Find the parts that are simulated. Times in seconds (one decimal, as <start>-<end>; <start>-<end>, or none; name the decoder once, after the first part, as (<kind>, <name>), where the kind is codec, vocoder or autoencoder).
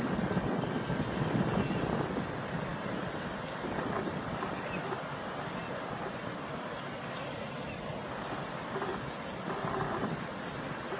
none